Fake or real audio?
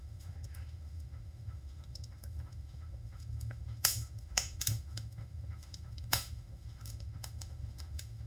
fake